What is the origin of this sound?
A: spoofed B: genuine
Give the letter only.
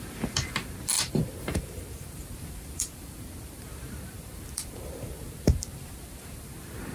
A